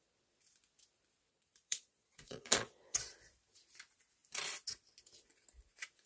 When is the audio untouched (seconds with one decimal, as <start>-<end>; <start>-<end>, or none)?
0.0-1.3; 3.0-6.1